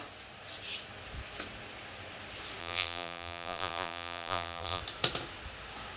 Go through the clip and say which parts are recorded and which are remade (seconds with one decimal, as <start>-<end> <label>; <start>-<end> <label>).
0.0-2.6 recorded; 2.6-4.8 remade; 4.8-6.0 recorded